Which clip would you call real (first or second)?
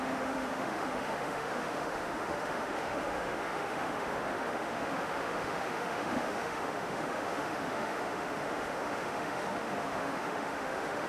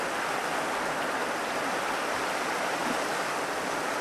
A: second